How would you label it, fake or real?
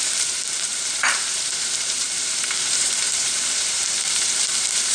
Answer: fake